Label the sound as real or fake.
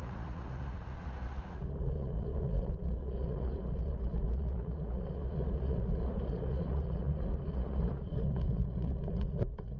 fake